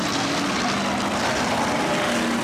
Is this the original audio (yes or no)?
yes